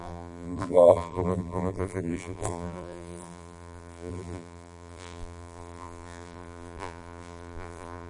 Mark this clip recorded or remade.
remade